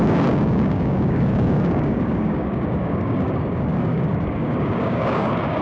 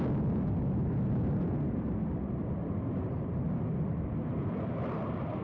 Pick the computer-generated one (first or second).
first